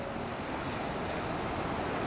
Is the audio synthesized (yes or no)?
no